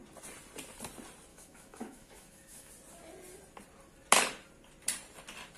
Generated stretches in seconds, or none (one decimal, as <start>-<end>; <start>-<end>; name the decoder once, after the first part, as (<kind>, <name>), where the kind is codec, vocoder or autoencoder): 1.3-2.7 (autoencoder, DAC-VAE)